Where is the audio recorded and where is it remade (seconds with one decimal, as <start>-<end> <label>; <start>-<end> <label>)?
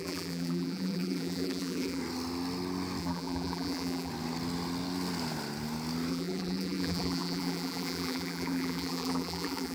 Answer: 0.0-2.0 remade; 2.0-3.0 recorded; 3.0-4.1 remade; 4.1-6.1 recorded; 6.1-9.7 remade